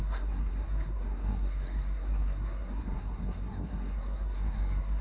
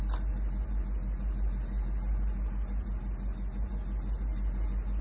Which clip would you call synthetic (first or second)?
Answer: first